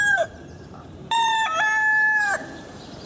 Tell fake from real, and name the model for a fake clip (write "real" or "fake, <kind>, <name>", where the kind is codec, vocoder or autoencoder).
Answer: fake, vocoder, BigVGAN v2